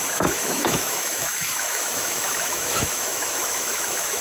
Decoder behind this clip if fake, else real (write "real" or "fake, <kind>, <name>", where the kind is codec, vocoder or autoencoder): fake, autoencoder, DAC-VAE